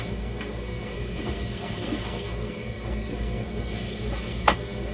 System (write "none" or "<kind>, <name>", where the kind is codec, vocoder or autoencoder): codec, SNAC